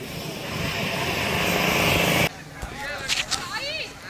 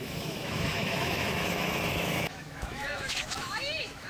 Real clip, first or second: first